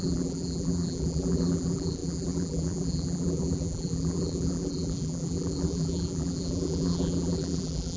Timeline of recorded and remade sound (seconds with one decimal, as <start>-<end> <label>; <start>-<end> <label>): 0.0-8.0 remade